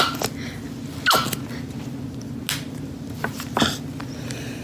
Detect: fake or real real